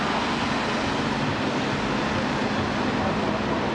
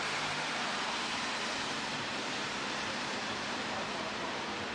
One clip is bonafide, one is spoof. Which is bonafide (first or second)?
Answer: first